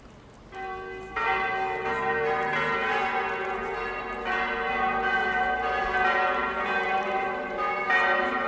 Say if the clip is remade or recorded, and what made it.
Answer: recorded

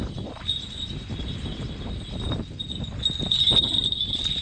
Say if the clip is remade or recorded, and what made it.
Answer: recorded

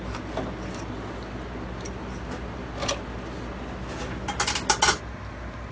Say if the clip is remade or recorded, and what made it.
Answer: recorded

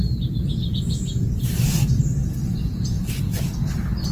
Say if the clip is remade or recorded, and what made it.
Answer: recorded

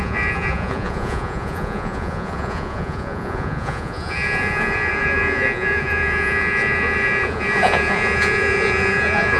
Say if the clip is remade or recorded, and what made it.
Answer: remade, vocoder, Vocos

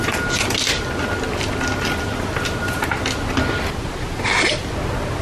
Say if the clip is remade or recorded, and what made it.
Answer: recorded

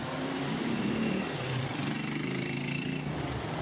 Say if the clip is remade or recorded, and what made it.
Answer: remade, vocoder, BigVGAN v2